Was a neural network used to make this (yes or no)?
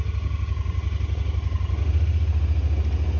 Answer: no